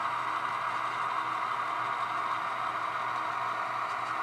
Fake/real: real